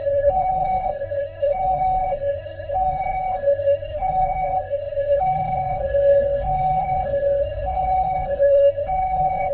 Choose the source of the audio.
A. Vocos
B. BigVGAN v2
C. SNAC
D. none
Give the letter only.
C